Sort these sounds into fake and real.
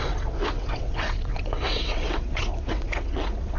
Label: fake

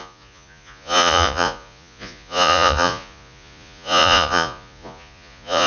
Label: fake